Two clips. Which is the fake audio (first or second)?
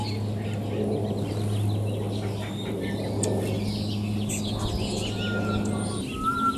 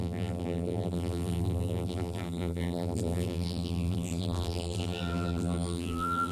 second